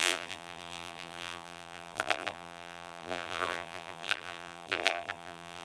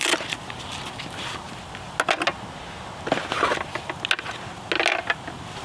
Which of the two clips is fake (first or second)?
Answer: first